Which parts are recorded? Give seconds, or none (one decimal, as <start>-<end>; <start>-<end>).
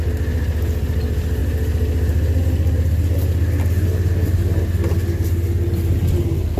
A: 0.0-6.6